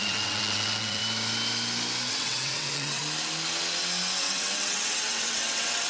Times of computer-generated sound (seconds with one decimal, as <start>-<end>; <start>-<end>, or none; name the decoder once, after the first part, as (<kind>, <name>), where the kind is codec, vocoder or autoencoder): 0.0-1.0 (vocoder, WaveNeXt); 2.1-3.0; 4.2-5.9